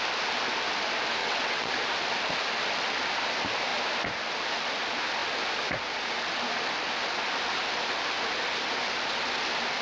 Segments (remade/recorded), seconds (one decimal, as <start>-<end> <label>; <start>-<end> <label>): 0.0-1.2 recorded; 1.2-1.7 remade; 1.7-9.8 recorded